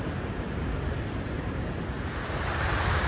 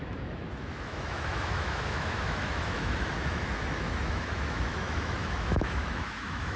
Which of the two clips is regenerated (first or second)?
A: second